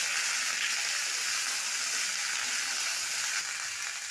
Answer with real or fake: real